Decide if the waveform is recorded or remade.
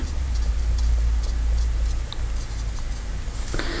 recorded